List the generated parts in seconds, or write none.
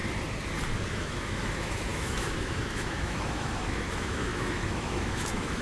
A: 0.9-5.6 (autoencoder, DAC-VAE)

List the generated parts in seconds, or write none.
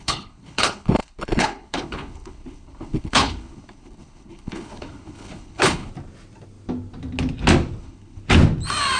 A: 0.0-5.9 (codec, HILCodec); 7.8-8.2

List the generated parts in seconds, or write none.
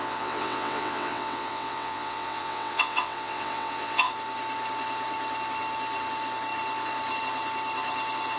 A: 0.0-4.1 (vocoder, WaveNeXt)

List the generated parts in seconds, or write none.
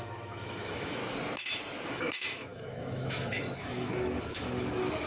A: 0.0-1.0 (autoencoder, DAC-VAE); 1.9-5.1